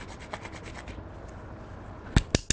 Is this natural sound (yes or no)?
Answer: yes